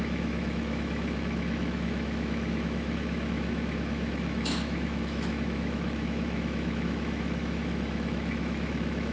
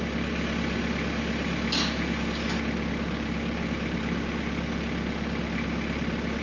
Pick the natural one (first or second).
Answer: second